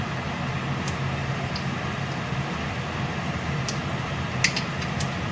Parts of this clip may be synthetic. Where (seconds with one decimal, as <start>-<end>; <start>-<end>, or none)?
1.2-4.4